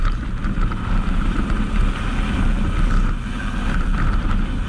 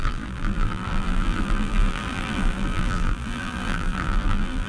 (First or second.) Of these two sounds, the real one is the first